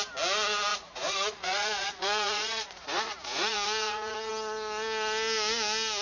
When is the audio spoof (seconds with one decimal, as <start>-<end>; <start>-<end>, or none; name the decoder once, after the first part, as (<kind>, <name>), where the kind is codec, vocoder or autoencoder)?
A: 0.7-4.3 (vocoder, Vocos)